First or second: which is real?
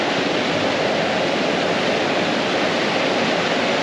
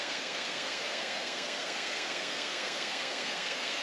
first